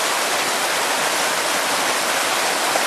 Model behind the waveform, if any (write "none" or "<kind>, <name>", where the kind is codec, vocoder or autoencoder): none